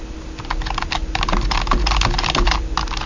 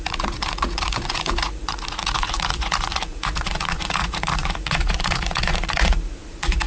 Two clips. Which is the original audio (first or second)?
first